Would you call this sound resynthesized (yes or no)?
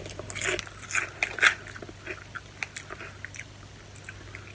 no